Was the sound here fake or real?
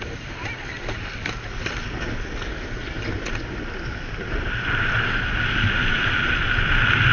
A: real